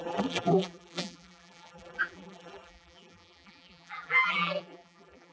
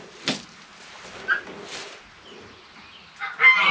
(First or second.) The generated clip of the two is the first